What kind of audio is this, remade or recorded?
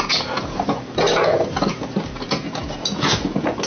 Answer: recorded